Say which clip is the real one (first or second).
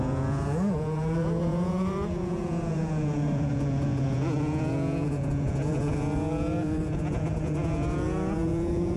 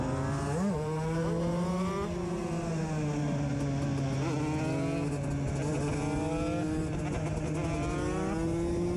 second